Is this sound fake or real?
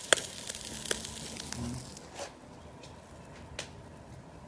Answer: real